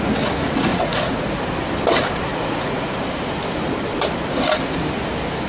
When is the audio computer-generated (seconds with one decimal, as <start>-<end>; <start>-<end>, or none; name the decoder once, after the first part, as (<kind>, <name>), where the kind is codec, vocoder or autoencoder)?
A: 0.7-1.4 (vocoder, Vocos); 2.3-3.0